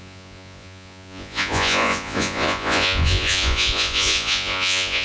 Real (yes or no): no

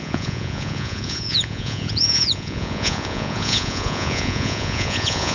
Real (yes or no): no